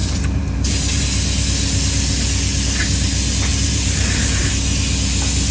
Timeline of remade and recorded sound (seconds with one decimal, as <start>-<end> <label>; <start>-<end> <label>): 0.0-1.0 remade; 1.0-3.5 recorded; 3.5-4.5 remade; 4.5-5.5 recorded